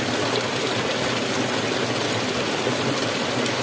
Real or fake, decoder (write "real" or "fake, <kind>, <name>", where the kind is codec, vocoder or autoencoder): real